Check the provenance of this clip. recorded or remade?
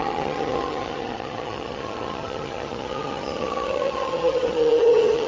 remade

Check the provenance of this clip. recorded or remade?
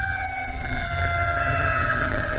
remade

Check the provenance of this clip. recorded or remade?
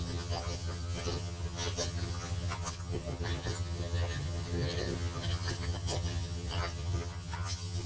remade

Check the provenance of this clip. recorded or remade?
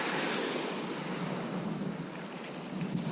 recorded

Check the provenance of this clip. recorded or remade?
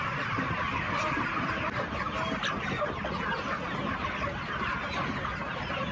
recorded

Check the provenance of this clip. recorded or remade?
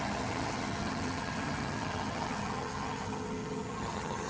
remade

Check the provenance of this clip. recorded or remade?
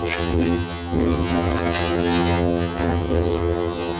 remade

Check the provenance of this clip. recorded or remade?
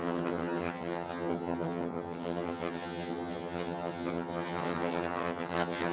remade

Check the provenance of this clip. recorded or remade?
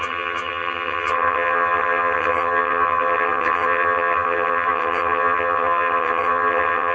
remade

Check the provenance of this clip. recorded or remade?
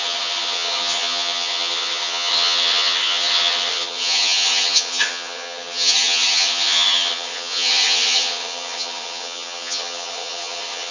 remade